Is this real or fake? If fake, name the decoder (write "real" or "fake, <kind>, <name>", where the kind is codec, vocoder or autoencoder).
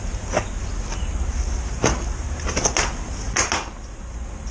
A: real